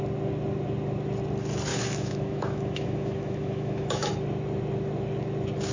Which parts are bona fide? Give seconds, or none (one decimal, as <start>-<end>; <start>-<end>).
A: 0.0-1.7; 4.1-5.7